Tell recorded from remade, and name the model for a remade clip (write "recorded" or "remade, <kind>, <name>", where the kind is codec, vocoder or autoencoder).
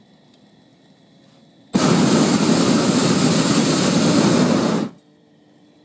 recorded